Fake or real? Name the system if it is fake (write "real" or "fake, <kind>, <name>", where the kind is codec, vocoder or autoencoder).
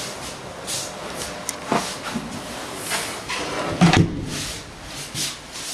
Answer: real